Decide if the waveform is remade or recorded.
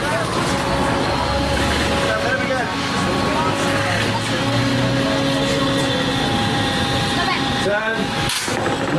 recorded